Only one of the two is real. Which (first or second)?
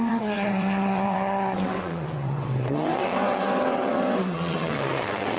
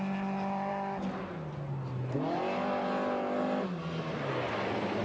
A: second